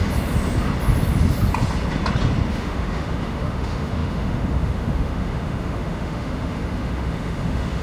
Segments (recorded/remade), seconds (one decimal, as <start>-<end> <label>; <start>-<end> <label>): 0.0-2.5 recorded; 2.5-7.8 remade